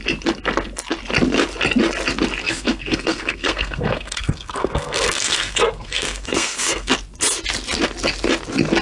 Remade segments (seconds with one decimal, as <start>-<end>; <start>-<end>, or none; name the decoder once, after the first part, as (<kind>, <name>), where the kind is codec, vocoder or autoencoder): 2.4-6.9 (codec, SNAC)